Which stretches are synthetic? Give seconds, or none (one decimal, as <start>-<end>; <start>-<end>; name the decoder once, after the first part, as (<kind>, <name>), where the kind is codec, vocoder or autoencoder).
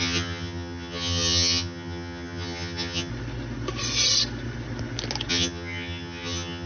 0.0-3.1 (vocoder, HiFi-GAN); 5.3-6.7